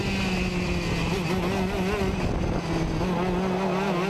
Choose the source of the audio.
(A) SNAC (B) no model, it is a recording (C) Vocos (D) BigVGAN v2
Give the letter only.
B